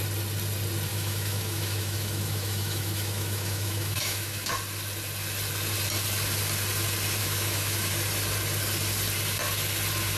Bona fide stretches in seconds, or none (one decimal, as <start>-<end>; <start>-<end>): 0.0-0.9; 4.5-7.2; 7.9-10.2